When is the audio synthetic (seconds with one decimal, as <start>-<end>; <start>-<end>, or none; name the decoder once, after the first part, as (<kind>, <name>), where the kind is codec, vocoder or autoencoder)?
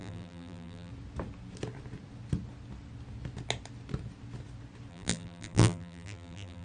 0.0-0.9 (vocoder, BigVGAN v2); 4.9-6.6